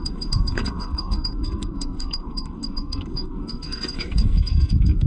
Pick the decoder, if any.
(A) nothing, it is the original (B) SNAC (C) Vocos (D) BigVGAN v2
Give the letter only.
B